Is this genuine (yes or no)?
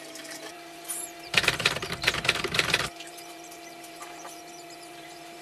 no